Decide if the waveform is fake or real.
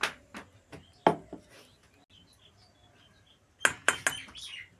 real